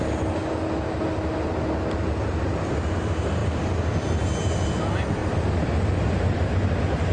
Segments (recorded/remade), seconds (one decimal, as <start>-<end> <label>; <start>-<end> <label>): 0.0-7.1 recorded